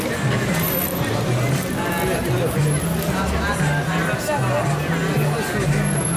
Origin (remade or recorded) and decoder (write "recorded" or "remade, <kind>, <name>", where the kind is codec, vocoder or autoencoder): recorded